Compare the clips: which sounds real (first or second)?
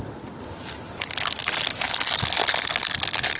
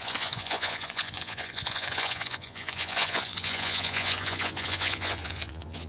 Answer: first